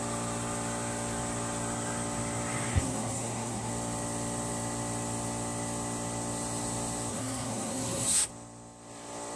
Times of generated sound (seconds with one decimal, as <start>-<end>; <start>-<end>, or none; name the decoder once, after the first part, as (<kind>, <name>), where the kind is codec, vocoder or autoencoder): 2.7-3.7 (codec, SNAC); 7.1-8.3